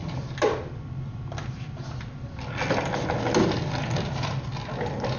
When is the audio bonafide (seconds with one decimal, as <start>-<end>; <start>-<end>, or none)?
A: 0.0-5.2